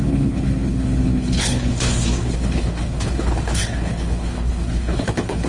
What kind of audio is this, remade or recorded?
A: remade